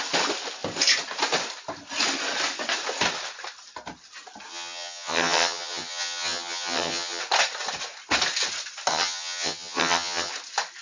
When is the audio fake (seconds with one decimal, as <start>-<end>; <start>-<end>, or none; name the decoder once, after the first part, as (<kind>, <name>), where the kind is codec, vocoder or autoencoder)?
4.5-7.2 (vocoder, HiFi-GAN); 8.9-10.3